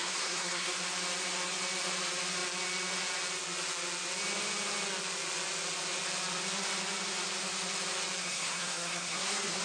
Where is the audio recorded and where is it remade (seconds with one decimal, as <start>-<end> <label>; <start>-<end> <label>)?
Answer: 0.0-0.7 remade; 0.7-8.2 recorded; 8.2-9.6 remade